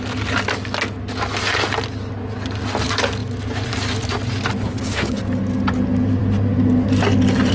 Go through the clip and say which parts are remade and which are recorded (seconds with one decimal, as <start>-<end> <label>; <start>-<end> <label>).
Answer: 0.0-4.6 recorded; 4.6-5.2 remade; 5.2-7.5 recorded